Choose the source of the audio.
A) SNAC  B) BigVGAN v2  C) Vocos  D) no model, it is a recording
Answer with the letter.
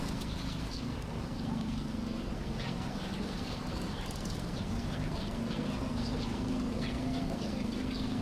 A